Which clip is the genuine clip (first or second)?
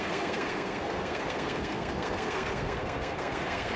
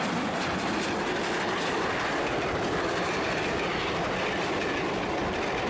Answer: second